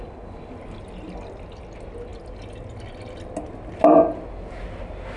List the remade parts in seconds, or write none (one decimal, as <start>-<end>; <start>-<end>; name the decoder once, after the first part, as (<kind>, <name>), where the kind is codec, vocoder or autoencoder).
none

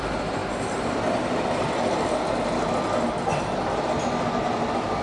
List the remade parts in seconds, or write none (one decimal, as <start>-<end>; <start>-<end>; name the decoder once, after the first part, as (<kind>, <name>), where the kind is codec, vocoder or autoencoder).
none

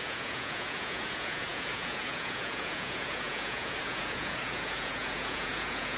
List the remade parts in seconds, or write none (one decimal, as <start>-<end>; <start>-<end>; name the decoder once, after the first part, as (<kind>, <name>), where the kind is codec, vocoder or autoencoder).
0.0-6.0 (vocoder, Vocos)